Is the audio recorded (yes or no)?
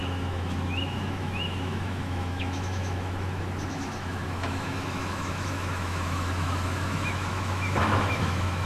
no